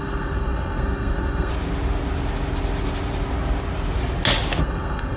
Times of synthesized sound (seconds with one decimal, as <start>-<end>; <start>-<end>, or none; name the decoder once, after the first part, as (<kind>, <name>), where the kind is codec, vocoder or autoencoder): 0.0-1.5 (codec, SNAC); 4.6-5.2